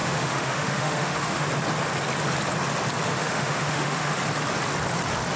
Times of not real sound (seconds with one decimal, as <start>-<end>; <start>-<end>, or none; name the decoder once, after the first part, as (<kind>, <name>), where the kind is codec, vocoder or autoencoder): 0.0-1.5 (autoencoder, DAC-VAE); 3.1-4.1